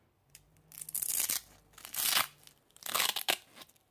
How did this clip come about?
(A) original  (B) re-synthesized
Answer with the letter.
A